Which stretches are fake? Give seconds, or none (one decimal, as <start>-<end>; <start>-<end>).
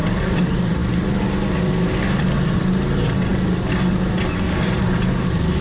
none